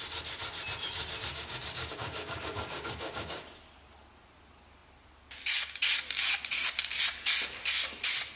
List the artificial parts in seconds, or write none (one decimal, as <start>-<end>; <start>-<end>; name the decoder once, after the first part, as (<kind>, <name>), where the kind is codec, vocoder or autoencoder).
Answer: 1.3-3.4 (codec, DAC)